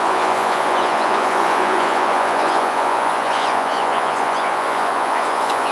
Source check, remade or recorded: remade